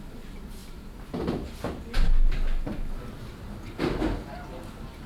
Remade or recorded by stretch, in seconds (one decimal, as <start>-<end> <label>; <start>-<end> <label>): 0.0-5.1 recorded